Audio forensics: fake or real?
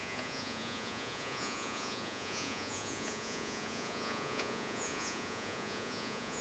fake